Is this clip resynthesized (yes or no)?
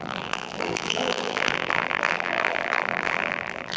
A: yes